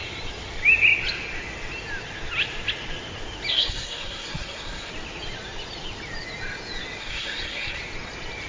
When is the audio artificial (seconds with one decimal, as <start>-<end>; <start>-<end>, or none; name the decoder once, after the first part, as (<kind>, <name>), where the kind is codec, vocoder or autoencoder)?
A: 3.5-4.9 (codec, SNAC); 7.0-7.8

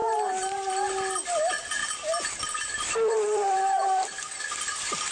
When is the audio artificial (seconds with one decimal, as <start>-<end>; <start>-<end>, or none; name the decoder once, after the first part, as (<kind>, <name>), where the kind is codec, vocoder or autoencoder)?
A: 0.0-0.7 (vocoder, BigVGAN v2); 1.8-4.4

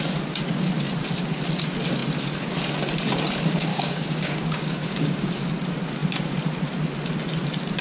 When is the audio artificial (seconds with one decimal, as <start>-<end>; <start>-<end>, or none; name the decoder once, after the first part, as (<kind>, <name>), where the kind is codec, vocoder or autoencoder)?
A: 3.7-5.3 (codec, DAC)

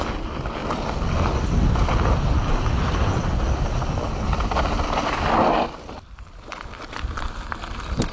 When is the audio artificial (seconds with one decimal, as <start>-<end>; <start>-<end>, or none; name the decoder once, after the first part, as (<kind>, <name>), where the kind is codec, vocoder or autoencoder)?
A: none

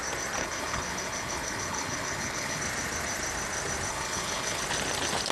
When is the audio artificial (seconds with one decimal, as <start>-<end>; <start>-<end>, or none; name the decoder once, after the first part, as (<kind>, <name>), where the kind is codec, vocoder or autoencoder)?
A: 0.4-2.6 (codec, HILCodec); 3.9-4.6

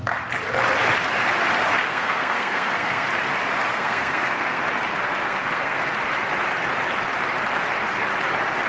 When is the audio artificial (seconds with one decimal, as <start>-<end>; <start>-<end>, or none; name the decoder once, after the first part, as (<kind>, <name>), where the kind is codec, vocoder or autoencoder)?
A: 1.9-3.1 (codec, SNAC); 3.7-4.6; 5.2-5.8

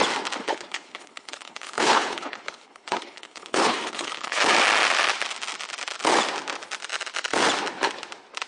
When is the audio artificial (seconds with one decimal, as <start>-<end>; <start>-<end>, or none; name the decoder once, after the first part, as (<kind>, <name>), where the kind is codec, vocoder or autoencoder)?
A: 0.4-4.4 (codec, HILCodec)